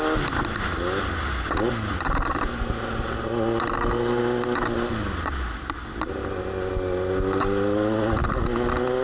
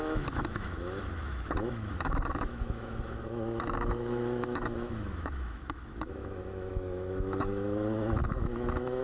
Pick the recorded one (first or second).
first